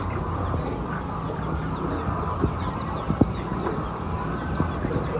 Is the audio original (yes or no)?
yes